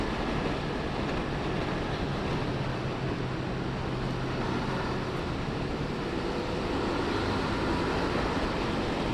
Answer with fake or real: real